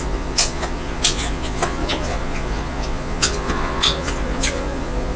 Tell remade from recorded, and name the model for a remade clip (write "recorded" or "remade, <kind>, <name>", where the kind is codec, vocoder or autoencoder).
remade, vocoder, Vocos